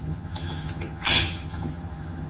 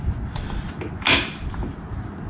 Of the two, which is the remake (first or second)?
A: first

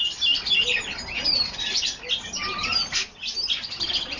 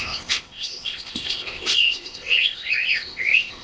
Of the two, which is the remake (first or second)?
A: second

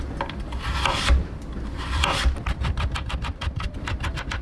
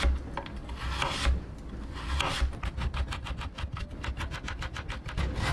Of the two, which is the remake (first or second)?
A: first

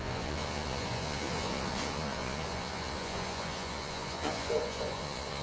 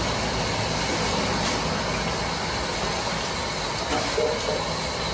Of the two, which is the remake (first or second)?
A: first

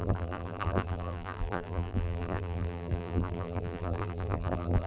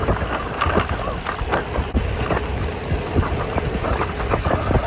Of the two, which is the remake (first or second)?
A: first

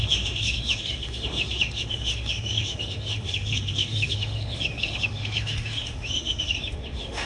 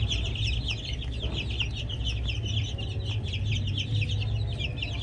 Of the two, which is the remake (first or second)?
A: first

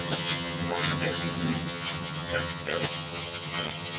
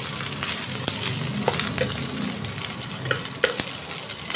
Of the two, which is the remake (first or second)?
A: first